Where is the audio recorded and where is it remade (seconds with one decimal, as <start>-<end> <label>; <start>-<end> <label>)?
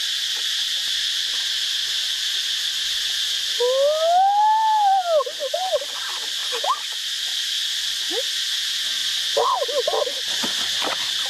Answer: 0.0-11.3 recorded